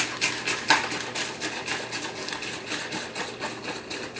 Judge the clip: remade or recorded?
recorded